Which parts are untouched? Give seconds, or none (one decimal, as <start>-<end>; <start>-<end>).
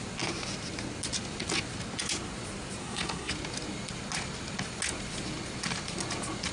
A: 0.0-2.8; 3.3-6.5